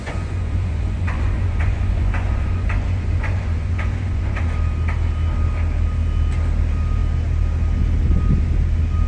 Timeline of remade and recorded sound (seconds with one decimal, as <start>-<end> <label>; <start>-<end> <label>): 0.0-4.4 remade; 4.4-9.1 recorded